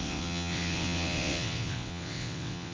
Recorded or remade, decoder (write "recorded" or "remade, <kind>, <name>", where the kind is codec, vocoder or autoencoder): remade, vocoder, WaveNeXt